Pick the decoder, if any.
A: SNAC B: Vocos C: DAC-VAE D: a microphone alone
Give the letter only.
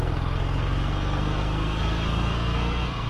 A